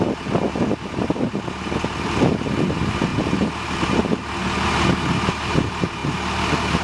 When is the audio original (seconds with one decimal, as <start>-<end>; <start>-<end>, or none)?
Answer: 0.0-3.1; 3.8-6.8